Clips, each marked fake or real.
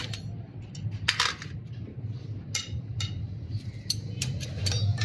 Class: real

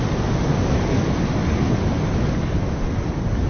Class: real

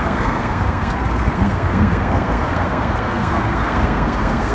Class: fake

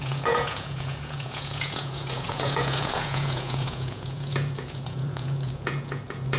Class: fake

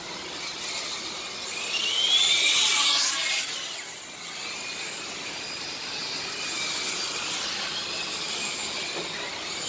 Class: real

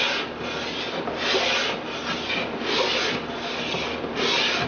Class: real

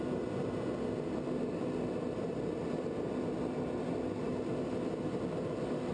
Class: real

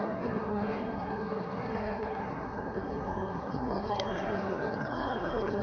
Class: fake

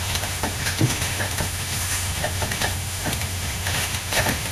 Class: fake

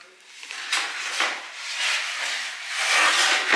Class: real